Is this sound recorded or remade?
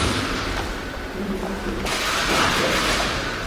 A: remade